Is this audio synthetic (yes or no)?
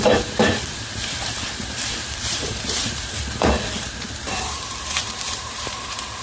yes